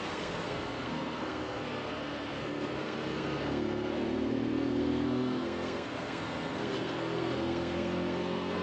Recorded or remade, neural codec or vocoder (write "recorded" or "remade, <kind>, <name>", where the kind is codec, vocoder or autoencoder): remade, codec, SNAC